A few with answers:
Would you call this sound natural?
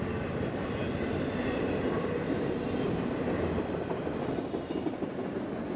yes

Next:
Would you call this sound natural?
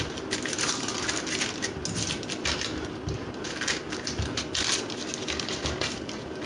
yes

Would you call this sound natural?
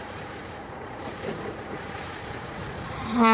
no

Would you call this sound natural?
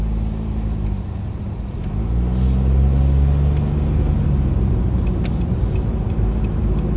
yes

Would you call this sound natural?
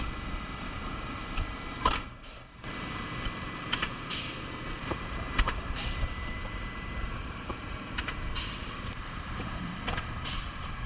no